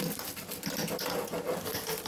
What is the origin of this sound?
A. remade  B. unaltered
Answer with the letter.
B